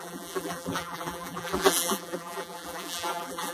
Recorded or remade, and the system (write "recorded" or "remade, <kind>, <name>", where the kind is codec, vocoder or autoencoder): remade, vocoder, BigVGAN v2